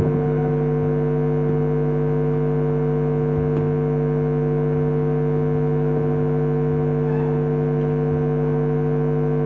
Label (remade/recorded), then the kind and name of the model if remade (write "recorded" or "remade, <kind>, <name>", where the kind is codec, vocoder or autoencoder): recorded